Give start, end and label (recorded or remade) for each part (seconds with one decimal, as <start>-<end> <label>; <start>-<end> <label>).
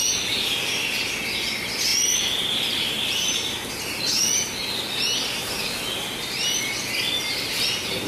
0.0-8.1 recorded